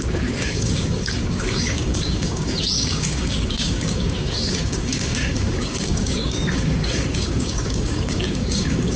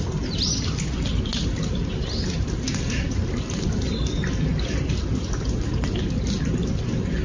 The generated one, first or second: first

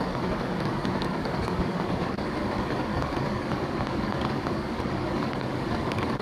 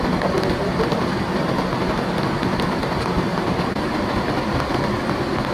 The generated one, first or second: first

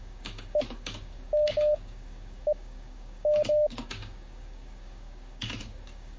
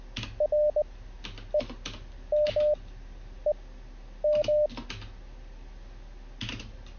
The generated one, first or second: first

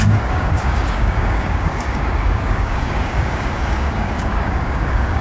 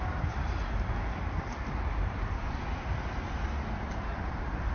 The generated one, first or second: first